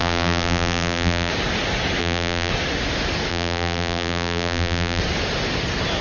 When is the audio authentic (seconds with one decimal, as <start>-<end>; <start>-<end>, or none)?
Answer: 1.3-2.0; 2.5-3.3; 5.0-6.0